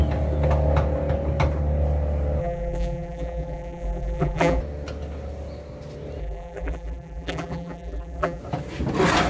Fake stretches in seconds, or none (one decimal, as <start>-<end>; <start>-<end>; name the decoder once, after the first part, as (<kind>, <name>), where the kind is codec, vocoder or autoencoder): 2.4-4.6 (vocoder, BigVGAN v2); 6.2-8.4